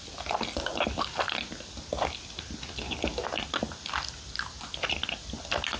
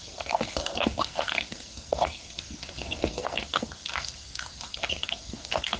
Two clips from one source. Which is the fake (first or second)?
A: second